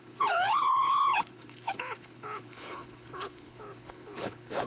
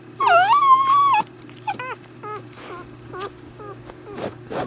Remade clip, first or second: first